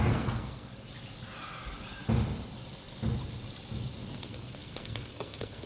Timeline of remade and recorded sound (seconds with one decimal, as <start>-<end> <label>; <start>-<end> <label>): 0.0-0.7 remade; 0.7-4.1 recorded; 4.1-5.7 remade